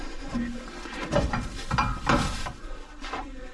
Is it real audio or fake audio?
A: real